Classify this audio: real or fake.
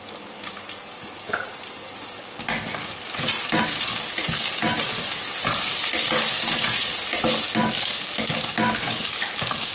real